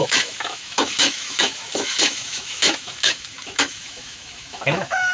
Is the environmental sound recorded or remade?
remade